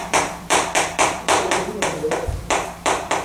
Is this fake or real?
fake